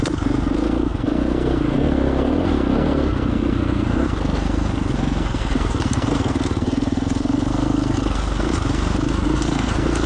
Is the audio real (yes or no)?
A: no